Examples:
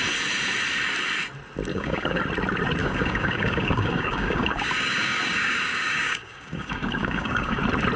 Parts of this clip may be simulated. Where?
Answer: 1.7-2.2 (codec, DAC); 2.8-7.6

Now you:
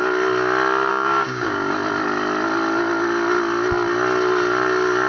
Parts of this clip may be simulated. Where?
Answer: 0.9-1.7 (codec, DAC)